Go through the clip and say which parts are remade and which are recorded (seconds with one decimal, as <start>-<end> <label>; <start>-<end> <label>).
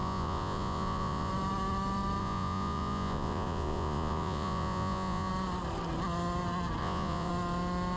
0.0-1.3 remade; 1.3-2.2 recorded; 2.2-5.3 remade; 5.3-6.8 recorded; 6.8-7.3 remade; 7.3-8.0 recorded